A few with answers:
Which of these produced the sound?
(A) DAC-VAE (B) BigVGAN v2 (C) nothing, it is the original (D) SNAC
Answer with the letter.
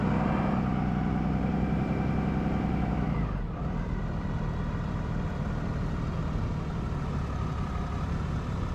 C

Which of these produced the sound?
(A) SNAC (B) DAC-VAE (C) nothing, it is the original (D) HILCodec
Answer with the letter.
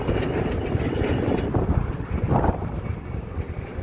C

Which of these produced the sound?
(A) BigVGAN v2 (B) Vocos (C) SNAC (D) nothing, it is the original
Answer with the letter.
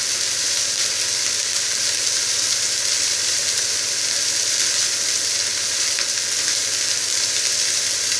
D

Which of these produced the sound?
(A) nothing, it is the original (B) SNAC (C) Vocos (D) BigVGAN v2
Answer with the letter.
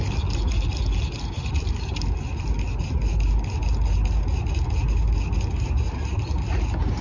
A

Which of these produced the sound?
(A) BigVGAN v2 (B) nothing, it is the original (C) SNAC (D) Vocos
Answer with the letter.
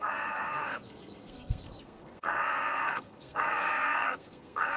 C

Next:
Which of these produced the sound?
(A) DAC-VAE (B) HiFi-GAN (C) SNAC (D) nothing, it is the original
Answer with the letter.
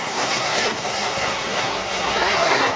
C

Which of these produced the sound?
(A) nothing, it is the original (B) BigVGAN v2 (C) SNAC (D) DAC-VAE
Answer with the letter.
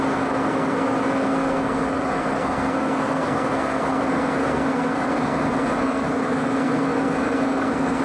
C